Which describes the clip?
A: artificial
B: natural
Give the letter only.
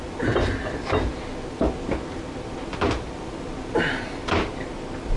B